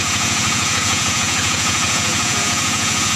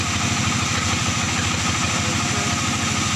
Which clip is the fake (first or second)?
first